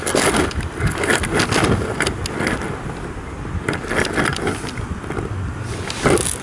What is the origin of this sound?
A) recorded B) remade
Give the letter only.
A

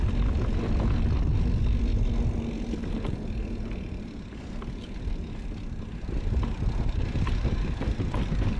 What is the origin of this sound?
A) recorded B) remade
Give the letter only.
A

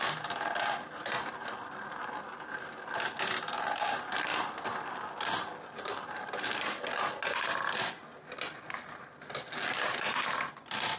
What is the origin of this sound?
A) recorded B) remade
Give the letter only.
A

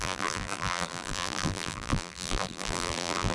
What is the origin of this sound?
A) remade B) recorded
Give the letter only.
A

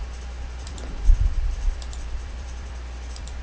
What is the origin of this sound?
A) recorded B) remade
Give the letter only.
B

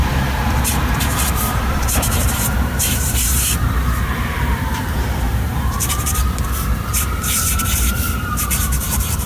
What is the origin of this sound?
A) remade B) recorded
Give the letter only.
A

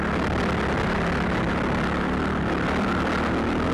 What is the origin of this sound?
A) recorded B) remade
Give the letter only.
A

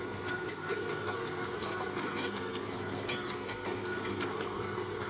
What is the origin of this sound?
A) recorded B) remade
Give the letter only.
B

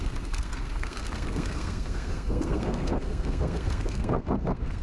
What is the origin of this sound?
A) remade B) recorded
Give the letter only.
A